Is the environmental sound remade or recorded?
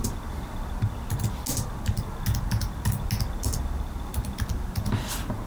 recorded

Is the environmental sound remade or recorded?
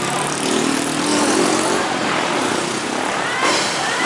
remade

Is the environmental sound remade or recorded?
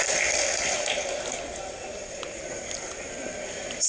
recorded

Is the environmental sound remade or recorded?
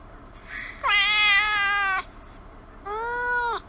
recorded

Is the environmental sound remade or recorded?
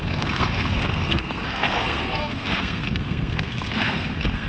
remade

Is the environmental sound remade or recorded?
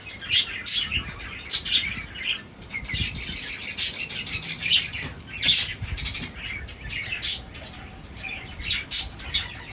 recorded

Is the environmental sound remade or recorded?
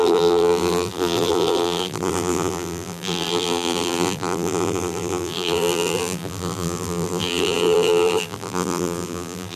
remade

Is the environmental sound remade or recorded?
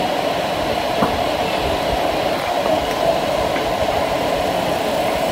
recorded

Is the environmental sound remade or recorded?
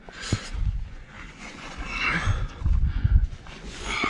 remade